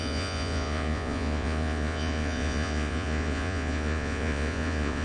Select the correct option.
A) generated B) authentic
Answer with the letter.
A